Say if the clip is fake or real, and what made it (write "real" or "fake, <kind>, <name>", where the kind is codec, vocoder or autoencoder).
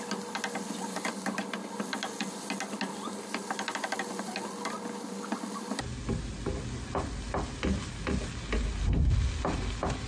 real